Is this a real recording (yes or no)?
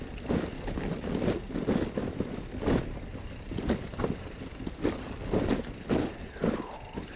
yes